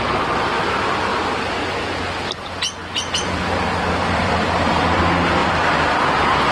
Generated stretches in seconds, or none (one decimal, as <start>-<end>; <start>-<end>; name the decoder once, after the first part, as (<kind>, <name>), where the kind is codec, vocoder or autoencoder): 1.1-2.1 (vocoder, BigVGAN v2); 5.4-6.0